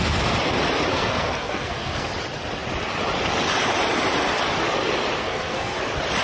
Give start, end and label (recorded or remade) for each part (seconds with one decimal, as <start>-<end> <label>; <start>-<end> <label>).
0.0-0.9 recorded; 0.9-2.1 remade; 2.1-5.2 recorded; 5.2-5.8 remade; 5.8-6.2 recorded